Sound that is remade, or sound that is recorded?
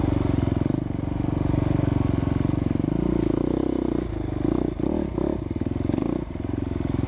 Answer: recorded